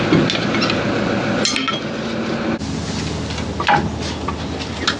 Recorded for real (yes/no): yes